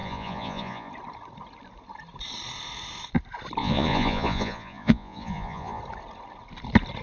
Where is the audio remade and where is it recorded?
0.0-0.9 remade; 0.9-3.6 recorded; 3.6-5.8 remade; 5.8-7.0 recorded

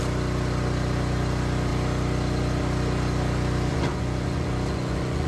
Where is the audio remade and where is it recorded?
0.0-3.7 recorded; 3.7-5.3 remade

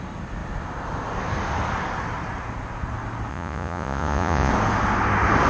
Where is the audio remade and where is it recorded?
0.0-3.3 recorded; 3.3-4.5 remade; 4.5-5.5 recorded